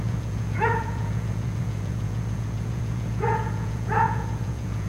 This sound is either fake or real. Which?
fake